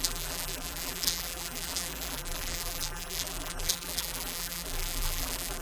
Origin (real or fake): fake